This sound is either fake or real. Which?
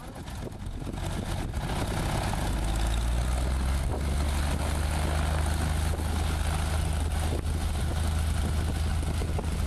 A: real